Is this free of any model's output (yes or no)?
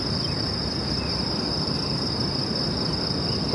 yes